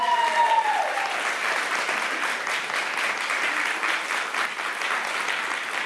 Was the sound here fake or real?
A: real